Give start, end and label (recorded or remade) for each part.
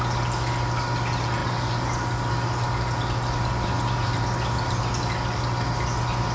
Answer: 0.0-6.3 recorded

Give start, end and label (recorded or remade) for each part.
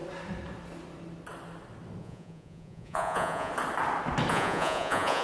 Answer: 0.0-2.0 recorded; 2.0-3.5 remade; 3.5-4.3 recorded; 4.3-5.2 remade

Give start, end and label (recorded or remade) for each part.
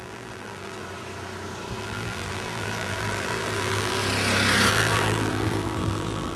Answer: 0.0-0.8 remade; 0.8-1.8 recorded; 1.8-4.0 remade; 4.0-4.7 recorded; 4.7-6.4 remade